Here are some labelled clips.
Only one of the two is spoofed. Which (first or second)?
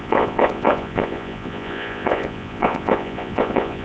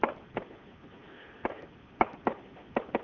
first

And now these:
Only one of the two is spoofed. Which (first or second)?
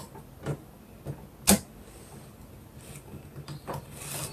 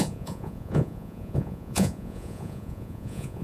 second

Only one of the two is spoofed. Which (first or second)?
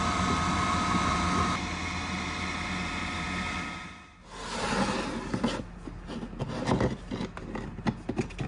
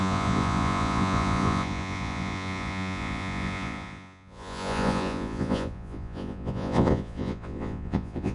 second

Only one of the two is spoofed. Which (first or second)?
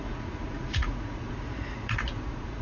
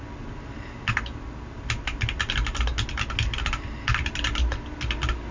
first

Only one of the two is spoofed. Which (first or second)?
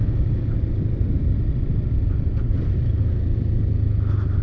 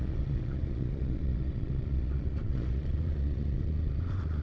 second